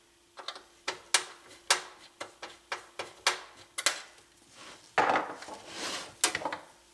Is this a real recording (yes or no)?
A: yes